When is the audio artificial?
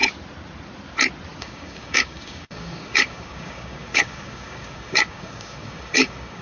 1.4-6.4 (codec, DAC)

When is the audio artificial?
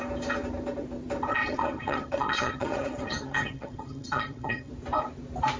1.3-4.7 (vocoder, HiFi-GAN)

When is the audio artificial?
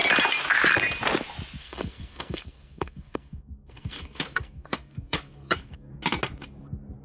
1.6-5.9 (codec, SNAC)